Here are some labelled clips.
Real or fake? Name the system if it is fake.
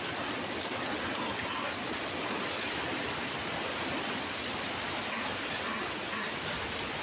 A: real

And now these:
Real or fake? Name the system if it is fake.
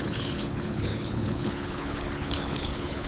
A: fake, codec, HILCodec